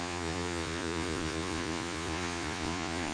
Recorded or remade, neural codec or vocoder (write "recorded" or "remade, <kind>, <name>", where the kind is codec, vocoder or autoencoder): remade, vocoder, Vocos